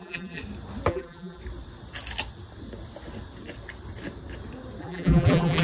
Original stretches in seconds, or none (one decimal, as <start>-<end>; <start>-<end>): 0.4-0.9; 1.4-4.8